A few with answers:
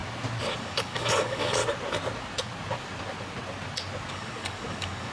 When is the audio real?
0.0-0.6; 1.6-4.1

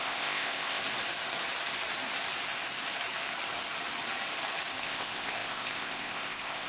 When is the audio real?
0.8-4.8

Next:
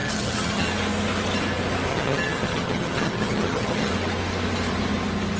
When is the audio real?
0.7-1.9; 3.9-5.4